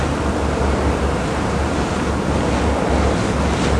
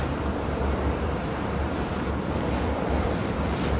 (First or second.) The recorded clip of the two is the first